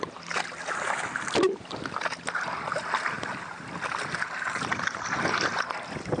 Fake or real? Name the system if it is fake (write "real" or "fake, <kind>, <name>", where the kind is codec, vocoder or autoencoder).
real